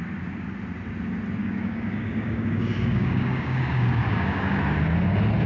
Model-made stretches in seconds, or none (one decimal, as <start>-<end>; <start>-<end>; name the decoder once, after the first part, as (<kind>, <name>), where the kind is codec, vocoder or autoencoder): 1.4-4.6 (codec, DAC)